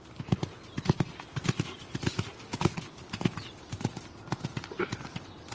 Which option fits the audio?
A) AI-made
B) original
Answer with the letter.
B